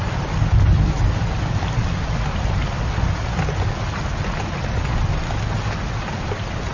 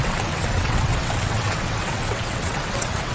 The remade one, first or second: second